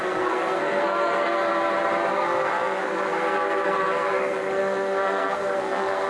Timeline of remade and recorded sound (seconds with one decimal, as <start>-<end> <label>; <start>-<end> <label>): 0.0-1.5 remade; 1.5-2.1 recorded; 2.1-6.1 remade